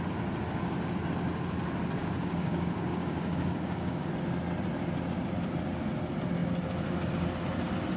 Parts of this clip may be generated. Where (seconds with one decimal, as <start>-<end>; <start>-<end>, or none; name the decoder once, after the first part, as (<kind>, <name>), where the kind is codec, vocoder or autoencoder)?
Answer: 2.0-4.1 (codec, DAC)